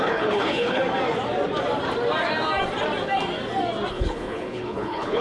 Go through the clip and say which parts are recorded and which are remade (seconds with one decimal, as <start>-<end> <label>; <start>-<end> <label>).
0.0-0.8 remade; 0.8-3.9 recorded; 3.9-5.2 remade